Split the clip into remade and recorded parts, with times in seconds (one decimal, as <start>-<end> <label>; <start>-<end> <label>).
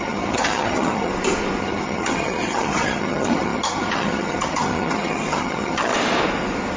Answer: 0.0-1.1 remade; 1.1-1.6 recorded; 1.6-5.9 remade; 5.9-6.8 recorded